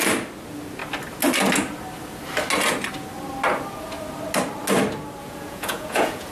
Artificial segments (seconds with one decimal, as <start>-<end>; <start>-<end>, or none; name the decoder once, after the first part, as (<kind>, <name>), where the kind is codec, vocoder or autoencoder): 5.2-6.3 (vocoder, Vocos)